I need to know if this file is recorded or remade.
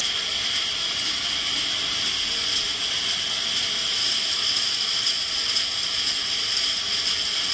recorded